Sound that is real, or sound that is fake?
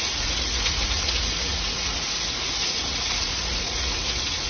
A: fake